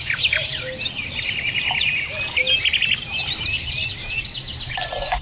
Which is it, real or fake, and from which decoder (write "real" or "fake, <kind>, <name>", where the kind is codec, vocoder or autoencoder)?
real